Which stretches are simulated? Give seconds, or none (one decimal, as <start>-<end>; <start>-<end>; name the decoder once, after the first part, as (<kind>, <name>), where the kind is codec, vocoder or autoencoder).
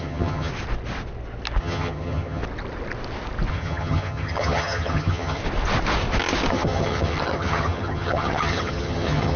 0.0-0.5 (vocoder, HiFi-GAN); 1.6-2.4; 3.5-5.4; 6.5-9.4